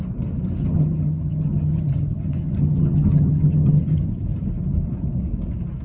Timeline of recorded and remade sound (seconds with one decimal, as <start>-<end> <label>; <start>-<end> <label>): 0.0-0.6 recorded; 0.6-4.1 remade; 4.1-5.8 recorded